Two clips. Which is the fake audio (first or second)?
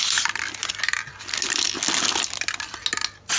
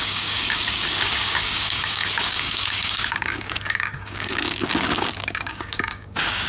second